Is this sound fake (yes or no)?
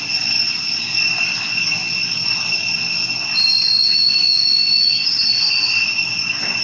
no